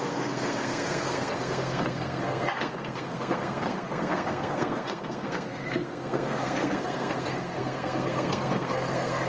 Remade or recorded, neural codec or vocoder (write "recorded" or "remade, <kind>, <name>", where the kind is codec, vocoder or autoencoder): remade, codec, SNAC